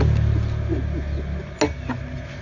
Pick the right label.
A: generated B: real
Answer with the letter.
B